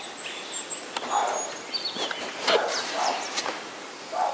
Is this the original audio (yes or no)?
yes